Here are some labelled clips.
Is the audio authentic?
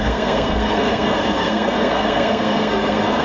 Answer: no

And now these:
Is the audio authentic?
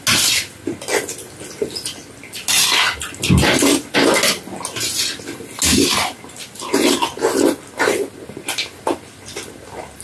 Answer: yes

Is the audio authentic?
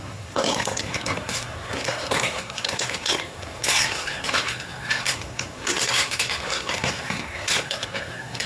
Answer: no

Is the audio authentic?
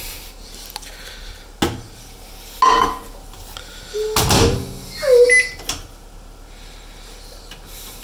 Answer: yes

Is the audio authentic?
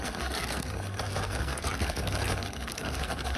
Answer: no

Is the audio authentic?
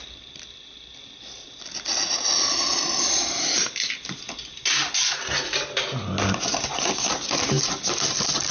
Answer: yes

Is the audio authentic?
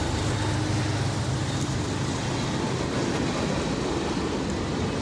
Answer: yes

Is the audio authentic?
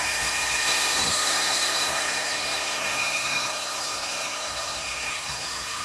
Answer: no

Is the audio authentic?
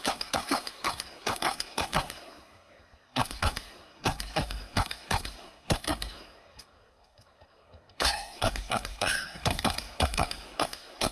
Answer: no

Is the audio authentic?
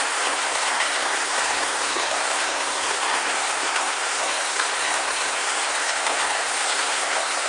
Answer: no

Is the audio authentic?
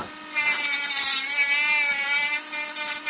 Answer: yes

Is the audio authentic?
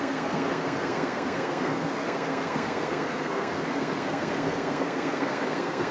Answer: no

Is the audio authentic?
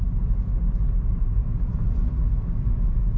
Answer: yes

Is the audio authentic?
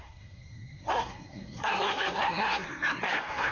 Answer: no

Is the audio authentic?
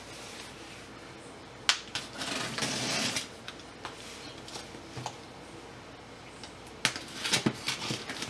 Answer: yes